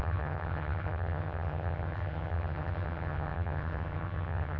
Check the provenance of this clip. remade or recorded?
remade